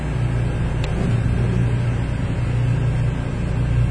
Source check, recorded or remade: recorded